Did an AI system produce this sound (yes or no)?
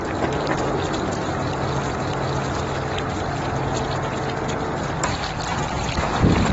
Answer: no